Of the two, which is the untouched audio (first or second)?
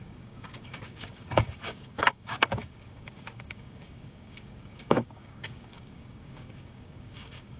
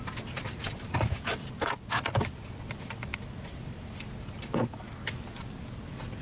second